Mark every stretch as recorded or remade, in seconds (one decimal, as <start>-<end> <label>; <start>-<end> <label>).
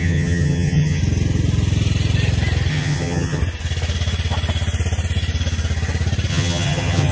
0.0-1.0 remade; 1.0-2.7 recorded; 2.7-3.4 remade; 3.4-6.3 recorded; 6.3-7.1 remade